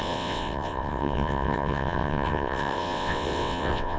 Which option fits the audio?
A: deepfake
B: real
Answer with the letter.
A